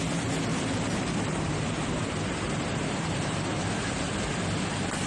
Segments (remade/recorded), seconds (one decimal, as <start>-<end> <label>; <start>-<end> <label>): 0.0-0.5 recorded; 0.5-3.4 remade; 3.4-5.1 recorded